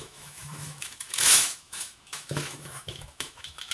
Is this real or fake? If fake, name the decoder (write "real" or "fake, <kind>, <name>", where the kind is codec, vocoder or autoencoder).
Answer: fake, autoencoder, DAC-VAE